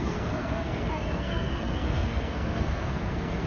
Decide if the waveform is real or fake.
fake